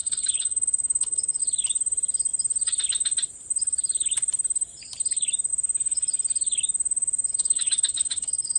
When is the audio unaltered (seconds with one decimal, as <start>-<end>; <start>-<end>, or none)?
1.4-7.3